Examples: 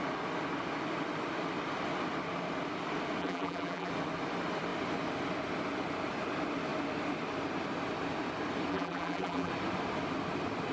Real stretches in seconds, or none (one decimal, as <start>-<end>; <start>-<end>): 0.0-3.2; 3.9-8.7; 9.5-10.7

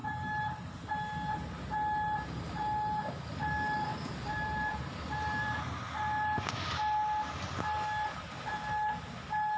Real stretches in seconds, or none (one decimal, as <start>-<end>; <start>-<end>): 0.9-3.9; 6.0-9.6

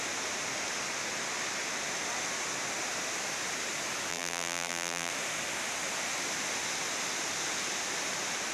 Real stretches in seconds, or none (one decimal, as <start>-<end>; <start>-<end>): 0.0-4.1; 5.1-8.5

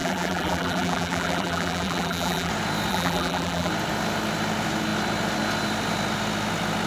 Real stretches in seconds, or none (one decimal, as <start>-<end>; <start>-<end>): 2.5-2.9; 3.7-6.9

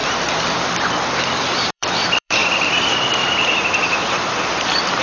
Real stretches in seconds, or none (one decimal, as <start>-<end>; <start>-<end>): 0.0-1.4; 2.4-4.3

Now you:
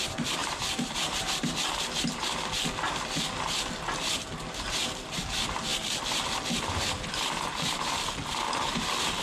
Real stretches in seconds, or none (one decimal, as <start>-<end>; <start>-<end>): 0.0-0.4; 1.4-9.2

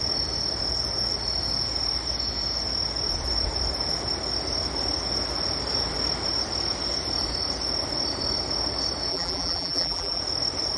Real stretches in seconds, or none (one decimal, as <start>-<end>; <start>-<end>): 0.0-9.1; 10.2-10.8